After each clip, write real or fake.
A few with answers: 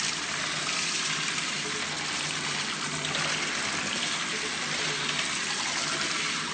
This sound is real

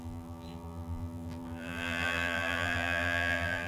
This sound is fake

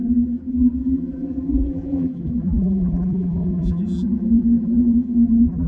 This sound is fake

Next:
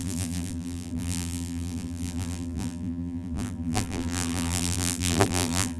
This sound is fake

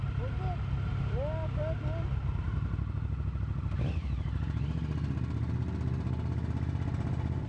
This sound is real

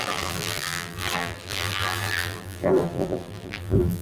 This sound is fake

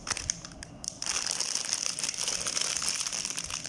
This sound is fake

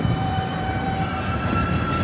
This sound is fake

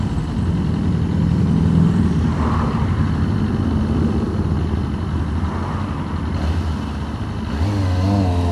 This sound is real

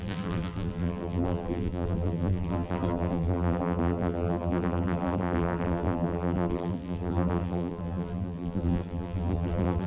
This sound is fake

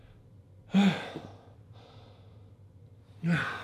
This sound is real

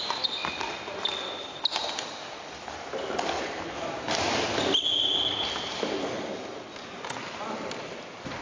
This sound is real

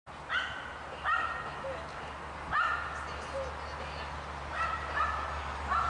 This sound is real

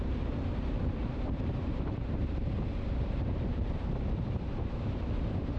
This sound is fake